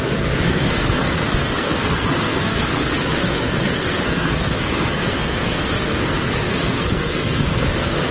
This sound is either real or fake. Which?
fake